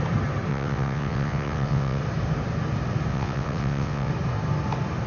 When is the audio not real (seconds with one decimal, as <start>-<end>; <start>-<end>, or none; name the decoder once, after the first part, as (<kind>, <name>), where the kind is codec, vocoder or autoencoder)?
0.5-2.0 (vocoder, WaveNeXt); 3.1-4.1